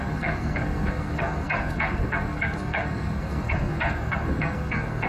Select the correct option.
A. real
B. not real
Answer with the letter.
B